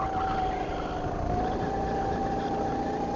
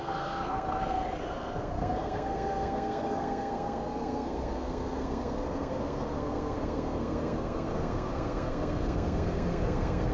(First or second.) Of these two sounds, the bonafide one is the first